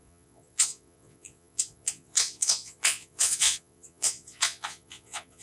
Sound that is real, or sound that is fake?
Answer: fake